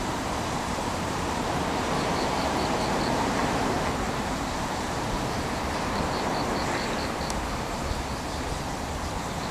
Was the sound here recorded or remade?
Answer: remade